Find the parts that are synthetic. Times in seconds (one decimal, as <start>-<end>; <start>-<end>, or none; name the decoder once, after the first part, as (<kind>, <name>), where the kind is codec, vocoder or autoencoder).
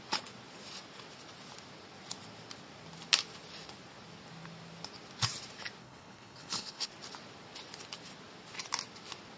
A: 5.8-6.9 (codec, HILCodec)